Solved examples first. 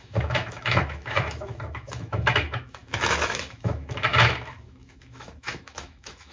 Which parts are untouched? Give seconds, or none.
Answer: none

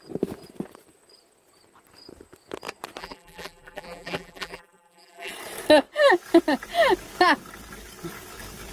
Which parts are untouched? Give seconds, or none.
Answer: 0.0-3.0; 5.3-8.7

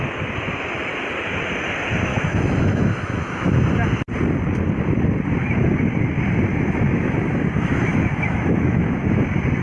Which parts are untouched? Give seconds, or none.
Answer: 0.0-2.1; 3.5-6.5; 9.2-9.6

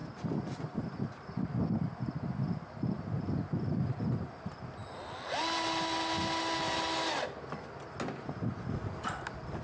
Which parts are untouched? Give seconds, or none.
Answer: 0.0-9.6